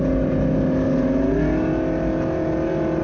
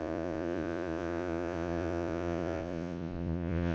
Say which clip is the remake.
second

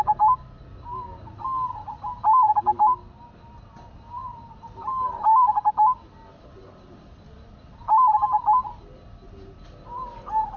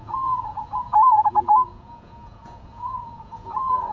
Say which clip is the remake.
second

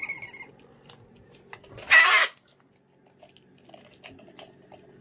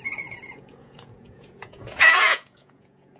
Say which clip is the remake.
second